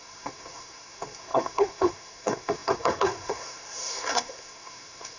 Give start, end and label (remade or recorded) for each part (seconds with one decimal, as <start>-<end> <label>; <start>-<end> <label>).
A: 0.0-5.2 remade